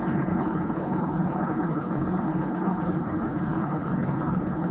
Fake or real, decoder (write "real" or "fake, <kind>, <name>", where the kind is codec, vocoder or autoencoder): fake, codec, HILCodec